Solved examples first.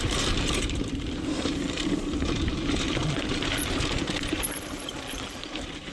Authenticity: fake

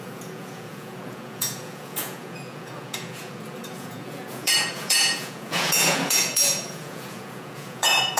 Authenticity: fake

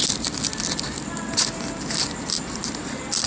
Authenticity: fake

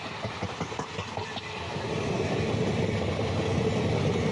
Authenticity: real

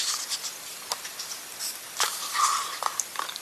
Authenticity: real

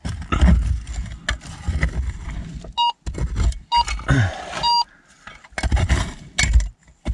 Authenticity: real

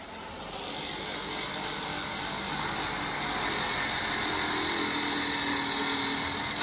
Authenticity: real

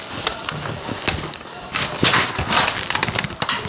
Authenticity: real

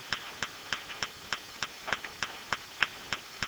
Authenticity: real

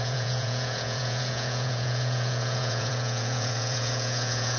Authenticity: fake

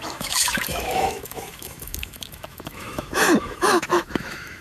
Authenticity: fake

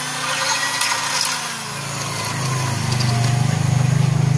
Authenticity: real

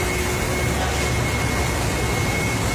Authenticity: real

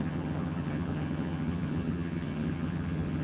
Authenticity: fake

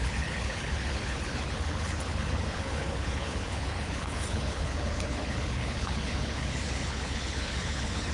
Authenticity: fake